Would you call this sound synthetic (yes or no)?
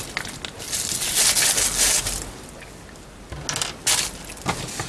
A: no